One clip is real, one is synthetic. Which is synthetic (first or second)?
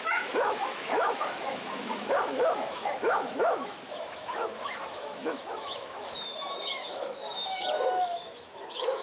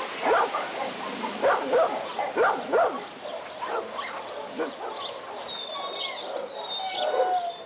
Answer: first